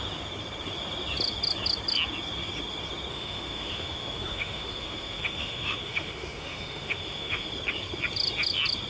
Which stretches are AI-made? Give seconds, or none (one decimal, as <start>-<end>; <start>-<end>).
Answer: 3.1-7.5